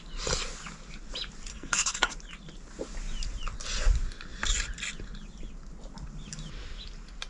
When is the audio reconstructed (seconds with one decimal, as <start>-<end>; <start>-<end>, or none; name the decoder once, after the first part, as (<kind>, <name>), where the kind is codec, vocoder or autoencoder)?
1.5-2.1 (codec, SNAC)